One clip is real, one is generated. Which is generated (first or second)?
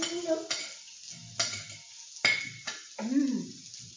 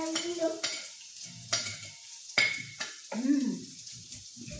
second